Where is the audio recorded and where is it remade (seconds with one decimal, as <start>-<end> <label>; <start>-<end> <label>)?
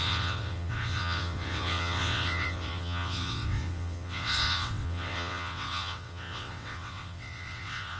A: 0.0-8.0 remade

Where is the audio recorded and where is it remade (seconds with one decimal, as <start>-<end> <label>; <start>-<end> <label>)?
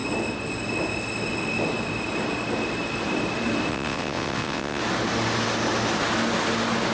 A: 0.0-3.7 recorded; 3.7-4.8 remade; 4.8-6.9 recorded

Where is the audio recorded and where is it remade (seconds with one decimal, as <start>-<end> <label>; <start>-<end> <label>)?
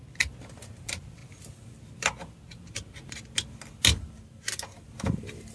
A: 0.0-5.5 recorded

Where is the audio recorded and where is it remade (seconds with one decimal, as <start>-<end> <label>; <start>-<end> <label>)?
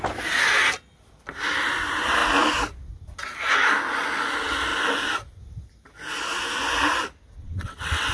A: 0.0-7.4 recorded; 7.4-8.1 remade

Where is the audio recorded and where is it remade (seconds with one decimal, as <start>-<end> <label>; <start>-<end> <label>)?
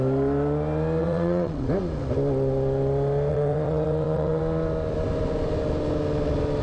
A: 0.0-1.0 recorded; 1.0-1.7 remade; 1.7-3.3 recorded; 3.3-4.4 remade; 4.4-6.6 recorded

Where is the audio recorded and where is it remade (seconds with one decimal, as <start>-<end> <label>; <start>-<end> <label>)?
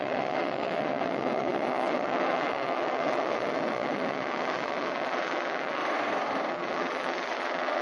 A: 0.0-5.8 remade; 5.8-6.5 recorded; 6.5-7.8 remade